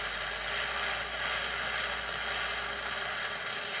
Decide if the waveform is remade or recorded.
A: recorded